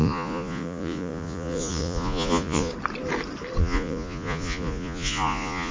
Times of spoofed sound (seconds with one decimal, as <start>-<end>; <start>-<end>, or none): 0.0-2.7; 3.6-5.7